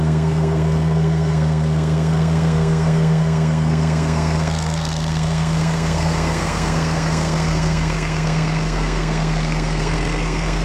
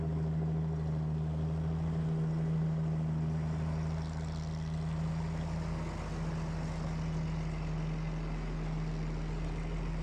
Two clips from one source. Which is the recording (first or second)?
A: second